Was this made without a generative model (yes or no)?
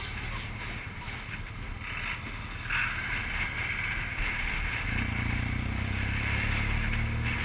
yes